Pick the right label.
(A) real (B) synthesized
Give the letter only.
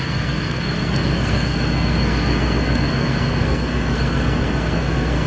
B